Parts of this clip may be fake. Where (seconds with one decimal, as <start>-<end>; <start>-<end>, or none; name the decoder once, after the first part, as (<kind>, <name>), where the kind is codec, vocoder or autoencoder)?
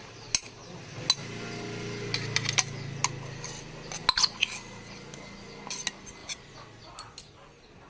none